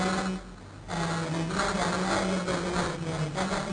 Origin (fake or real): real